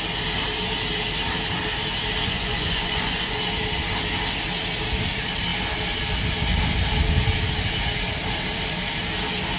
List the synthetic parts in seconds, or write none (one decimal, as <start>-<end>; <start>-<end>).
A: 2.2-3.4